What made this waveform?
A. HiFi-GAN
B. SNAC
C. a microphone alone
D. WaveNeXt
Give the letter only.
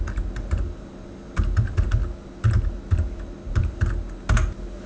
C